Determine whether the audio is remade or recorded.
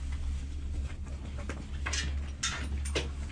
recorded